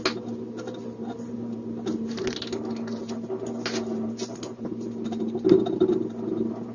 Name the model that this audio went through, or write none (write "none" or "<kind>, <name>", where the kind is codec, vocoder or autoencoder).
none